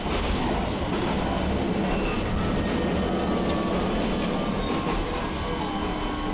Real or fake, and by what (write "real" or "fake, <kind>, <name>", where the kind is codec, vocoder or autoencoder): real